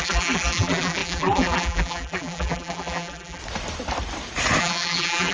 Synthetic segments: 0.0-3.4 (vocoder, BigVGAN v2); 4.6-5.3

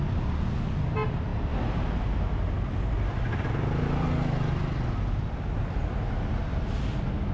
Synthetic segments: none

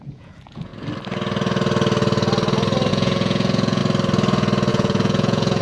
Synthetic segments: 0.0-0.7 (vocoder, Vocos); 2.9-3.8; 4.7-5.6

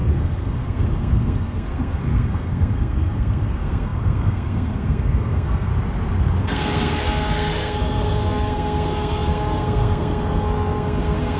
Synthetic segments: 0.0-5.7 (codec, SNAC); 6.4-11.4

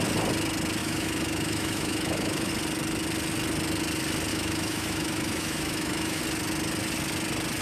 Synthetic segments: 0.8-2.5 (autoencoder, DAC-VAE); 4.3-6.2

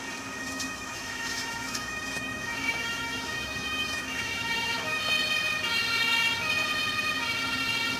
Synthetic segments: 0.4-5.0 (autoencoder, DAC-VAE)

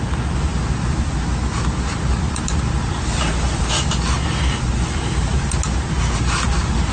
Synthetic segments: none